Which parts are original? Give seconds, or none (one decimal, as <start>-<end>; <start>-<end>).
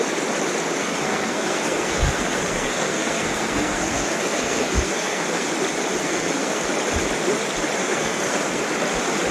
0.0-0.8; 5.5-6.0; 6.7-7.8; 8.6-9.3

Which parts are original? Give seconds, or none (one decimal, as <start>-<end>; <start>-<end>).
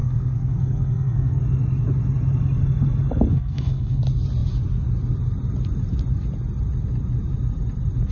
1.4-3.3; 4.0-8.1